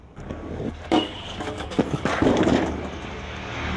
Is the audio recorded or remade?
remade